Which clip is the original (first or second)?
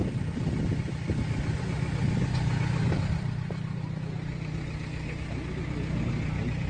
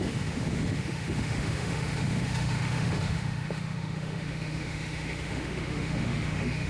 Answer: first